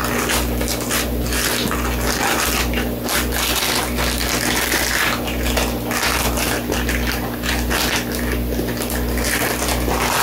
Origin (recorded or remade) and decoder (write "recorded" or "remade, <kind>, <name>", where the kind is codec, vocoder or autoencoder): recorded